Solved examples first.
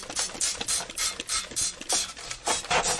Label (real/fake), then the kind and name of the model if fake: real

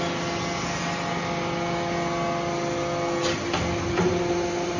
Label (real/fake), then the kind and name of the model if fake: real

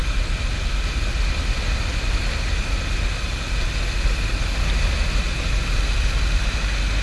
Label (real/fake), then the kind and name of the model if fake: real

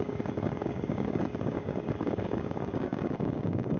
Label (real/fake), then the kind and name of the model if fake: fake, codec, DAC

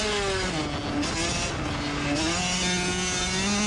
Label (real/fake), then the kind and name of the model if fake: real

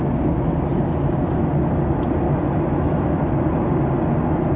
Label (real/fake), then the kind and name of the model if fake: real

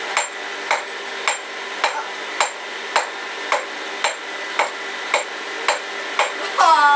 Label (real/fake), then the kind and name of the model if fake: real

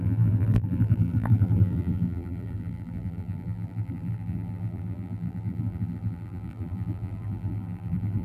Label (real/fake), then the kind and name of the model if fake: fake, vocoder, BigVGAN v2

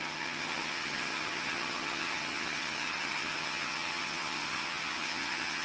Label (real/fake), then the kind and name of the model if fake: fake, vocoder, HiFi-GAN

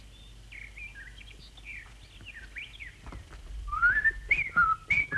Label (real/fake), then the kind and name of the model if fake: real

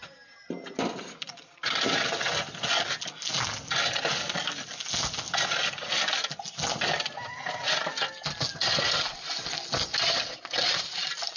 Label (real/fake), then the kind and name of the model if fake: real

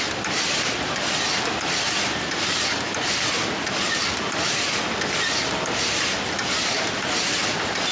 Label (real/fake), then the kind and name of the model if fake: real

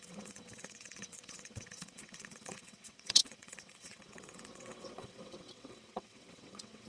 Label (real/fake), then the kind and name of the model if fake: fake, vocoder, WaveNeXt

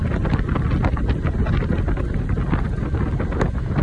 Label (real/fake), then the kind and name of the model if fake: real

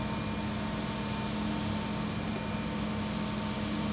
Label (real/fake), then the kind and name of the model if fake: real